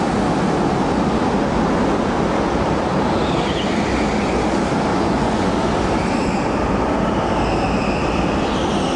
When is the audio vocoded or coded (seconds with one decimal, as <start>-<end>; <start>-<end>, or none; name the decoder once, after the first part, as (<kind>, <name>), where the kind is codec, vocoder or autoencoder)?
4.9-5.5 (vocoder, Vocos)